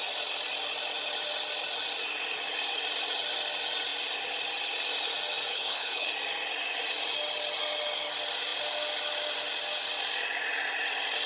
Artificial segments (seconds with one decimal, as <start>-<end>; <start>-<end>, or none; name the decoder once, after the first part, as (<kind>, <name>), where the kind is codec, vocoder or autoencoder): 5.5-6.1 (codec, HILCodec)